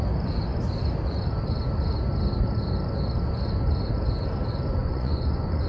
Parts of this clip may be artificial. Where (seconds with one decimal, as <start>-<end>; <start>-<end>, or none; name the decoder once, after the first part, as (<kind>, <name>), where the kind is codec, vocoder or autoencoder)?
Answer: 4.8-5.7 (vocoder, Vocos)